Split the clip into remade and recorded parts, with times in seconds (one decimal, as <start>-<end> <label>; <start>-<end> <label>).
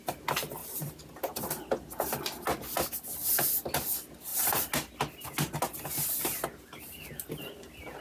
0.0-8.0 recorded